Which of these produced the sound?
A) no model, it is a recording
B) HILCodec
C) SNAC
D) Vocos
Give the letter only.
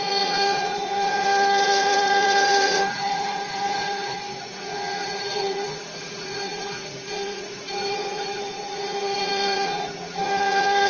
D